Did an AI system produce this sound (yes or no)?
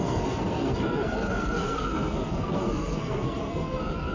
yes